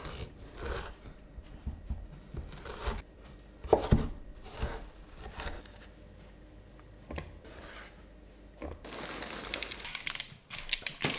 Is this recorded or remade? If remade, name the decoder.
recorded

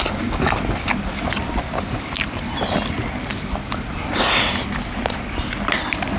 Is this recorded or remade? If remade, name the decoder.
recorded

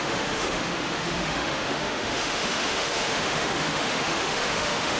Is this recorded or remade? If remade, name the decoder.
remade, autoencoder, DAC-VAE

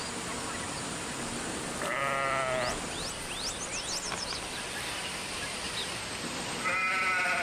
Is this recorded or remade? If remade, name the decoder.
recorded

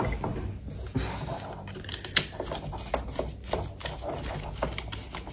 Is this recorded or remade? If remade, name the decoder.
recorded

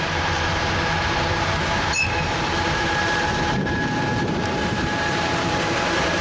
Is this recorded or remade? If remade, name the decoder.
remade, vocoder, BigVGAN v2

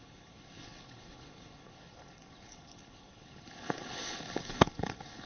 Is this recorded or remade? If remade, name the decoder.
remade, codec, HILCodec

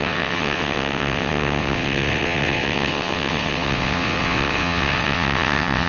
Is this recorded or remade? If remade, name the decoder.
remade, vocoder, WaveNeXt